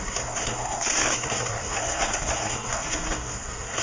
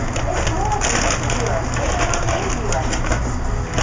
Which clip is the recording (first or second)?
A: second